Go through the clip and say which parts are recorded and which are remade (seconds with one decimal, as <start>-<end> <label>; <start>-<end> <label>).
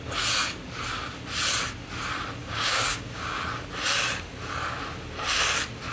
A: 0.0-2.4 recorded; 2.4-3.4 remade; 3.4-5.9 recorded